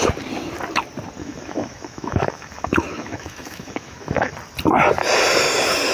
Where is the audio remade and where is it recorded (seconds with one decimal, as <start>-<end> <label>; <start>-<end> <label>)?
0.0-1.2 recorded; 1.2-4.3 remade; 4.3-5.9 recorded